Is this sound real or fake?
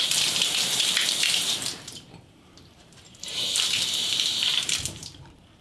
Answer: fake